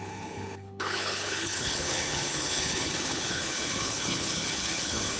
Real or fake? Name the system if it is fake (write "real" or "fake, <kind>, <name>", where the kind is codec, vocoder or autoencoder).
fake, codec, HILCodec